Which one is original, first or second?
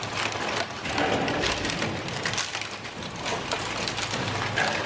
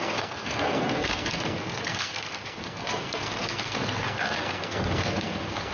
first